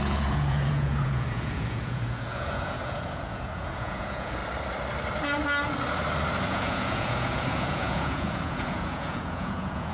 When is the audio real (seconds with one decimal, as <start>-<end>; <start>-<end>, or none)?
4.4-6.5